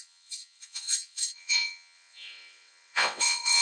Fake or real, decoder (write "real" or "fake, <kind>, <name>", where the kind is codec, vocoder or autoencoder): fake, vocoder, WaveNeXt